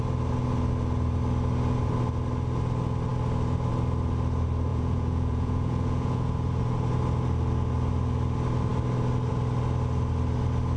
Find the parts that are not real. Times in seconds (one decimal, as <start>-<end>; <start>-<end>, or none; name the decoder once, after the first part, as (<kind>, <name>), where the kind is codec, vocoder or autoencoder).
4.7-6.6 (vocoder, Vocos)